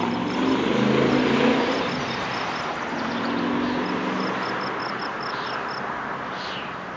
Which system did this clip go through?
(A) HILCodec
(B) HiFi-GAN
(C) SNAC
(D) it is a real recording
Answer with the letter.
D